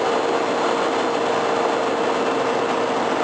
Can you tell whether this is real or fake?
real